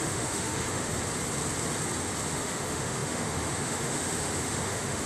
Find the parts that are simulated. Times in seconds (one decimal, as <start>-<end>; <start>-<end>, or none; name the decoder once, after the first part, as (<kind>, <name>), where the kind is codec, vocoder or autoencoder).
0.0-0.9 (autoencoder, DAC-VAE); 2.3-5.1